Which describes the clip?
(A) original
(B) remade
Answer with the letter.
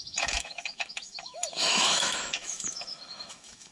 B